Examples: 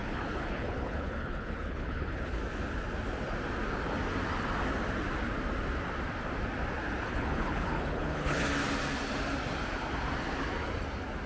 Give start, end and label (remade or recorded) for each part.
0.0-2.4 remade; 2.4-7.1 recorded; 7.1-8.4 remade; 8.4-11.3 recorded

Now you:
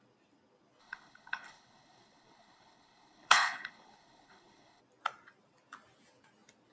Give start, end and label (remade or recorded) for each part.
0.0-0.8 recorded; 0.8-4.8 remade; 4.8-6.7 recorded

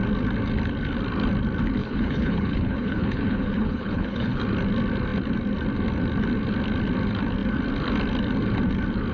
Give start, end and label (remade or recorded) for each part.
0.0-1.8 recorded; 1.8-4.4 remade; 4.4-9.1 recorded

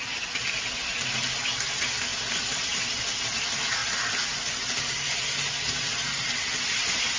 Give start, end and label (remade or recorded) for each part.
0.0-7.2 recorded